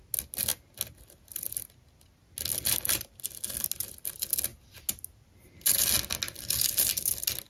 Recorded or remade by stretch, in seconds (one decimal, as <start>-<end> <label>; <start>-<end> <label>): 0.0-7.5 recorded